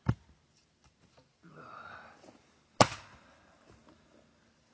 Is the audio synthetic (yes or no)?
no